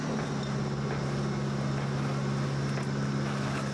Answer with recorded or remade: recorded